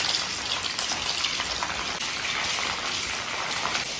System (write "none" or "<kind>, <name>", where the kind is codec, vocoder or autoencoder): none